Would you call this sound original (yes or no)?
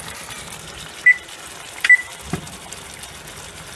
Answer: yes